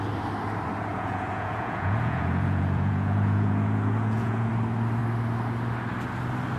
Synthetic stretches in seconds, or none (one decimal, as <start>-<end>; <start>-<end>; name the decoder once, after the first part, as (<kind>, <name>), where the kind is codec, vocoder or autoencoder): 0.9-4.5 (vocoder, Vocos)